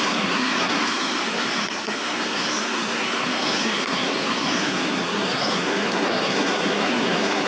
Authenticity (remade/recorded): remade